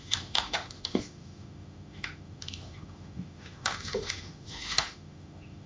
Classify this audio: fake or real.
fake